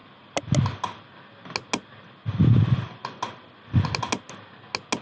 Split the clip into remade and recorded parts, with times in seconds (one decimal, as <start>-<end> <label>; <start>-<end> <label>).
0.0-5.0 recorded